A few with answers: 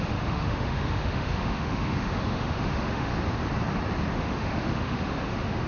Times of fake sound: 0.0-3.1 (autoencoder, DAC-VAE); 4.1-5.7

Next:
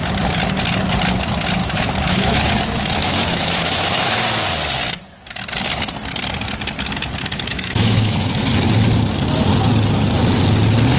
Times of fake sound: 1.6-4.2 (autoencoder, DAC-VAE); 7.5-8.5

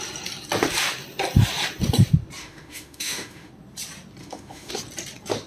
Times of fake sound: 2.4-3.5 (autoencoder, DAC-VAE); 4.2-4.7

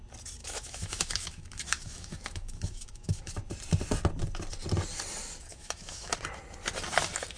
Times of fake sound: 0.4-3.3 (autoencoder, DAC-VAE); 5.5-6.1

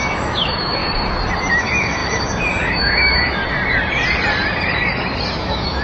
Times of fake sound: 0.0-0.8 (autoencoder, DAC-VAE); 1.5-2.0; 2.7-3.4; 5.3-5.8

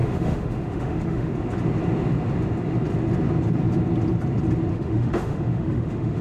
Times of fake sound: 0.0-1.3 (autoencoder, DAC-VAE); 4.7-6.2